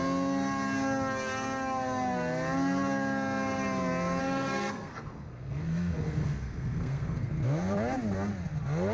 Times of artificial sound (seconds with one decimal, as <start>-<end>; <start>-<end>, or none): 4.2-7.3